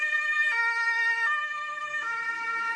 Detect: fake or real fake